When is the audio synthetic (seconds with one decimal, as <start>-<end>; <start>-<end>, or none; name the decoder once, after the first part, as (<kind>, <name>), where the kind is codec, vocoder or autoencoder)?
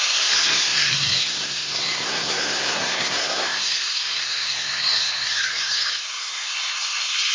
0.0-7.3 (codec, SNAC)